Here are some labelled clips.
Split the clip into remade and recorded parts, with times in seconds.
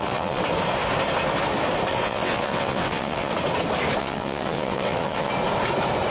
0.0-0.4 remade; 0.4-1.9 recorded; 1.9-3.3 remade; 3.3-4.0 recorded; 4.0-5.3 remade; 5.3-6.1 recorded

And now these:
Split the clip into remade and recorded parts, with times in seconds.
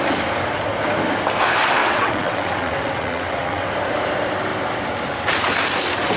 0.0-1.8 recorded; 1.8-3.7 remade; 3.7-6.2 recorded